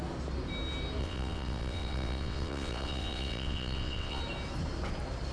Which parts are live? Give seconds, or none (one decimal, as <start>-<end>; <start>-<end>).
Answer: 0.0-1.0; 4.2-5.3